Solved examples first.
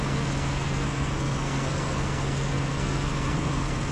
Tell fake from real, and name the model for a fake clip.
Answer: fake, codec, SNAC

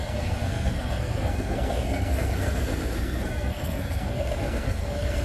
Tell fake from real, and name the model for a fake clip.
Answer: fake, codec, SNAC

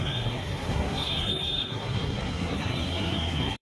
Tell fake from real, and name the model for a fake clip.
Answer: fake, codec, SNAC